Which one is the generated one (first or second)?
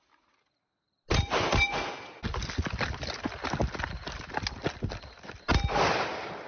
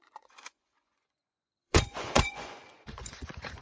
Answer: second